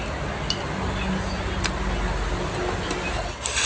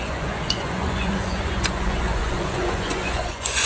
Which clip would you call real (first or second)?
first